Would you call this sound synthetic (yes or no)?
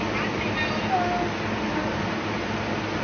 no